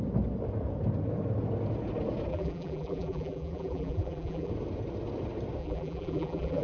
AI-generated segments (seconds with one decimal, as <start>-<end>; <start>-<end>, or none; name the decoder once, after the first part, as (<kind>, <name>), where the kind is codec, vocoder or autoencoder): 2.3-4.5 (vocoder, BigVGAN v2); 5.6-6.6